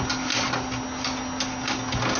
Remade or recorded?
recorded